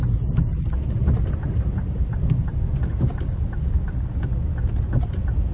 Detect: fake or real real